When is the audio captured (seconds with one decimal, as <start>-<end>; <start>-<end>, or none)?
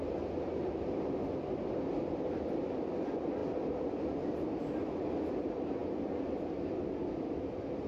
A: 0.0-7.9